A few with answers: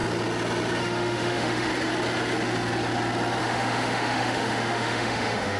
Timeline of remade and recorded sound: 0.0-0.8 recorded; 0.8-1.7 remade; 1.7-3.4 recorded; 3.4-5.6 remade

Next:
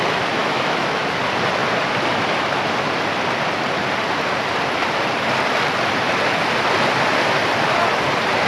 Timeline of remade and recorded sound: 0.0-0.4 recorded; 0.4-1.0 remade; 1.0-8.5 recorded

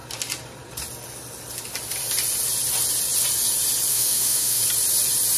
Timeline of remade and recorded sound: 0.0-3.9 recorded; 3.9-4.6 remade; 4.6-5.4 recorded

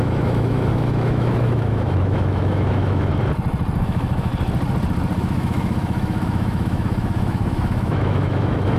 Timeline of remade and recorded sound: 0.0-3.1 remade; 3.1-3.8 recorded; 3.8-4.3 remade; 4.3-5.2 recorded; 5.2-8.8 remade

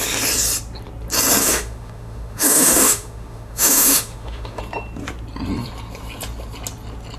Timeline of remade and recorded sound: 0.0-1.4 recorded; 1.4-4.6 remade; 4.6-7.2 recorded

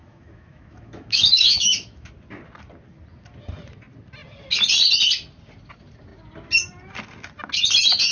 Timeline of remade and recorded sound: 0.0-2.1 remade; 2.1-8.1 recorded

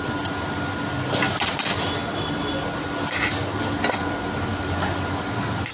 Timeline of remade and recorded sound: 0.0-5.7 recorded